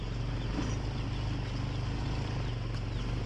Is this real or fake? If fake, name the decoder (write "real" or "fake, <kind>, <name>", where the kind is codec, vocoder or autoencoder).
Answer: real